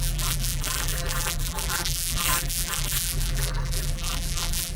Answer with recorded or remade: remade